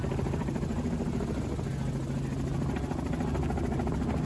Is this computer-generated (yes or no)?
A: no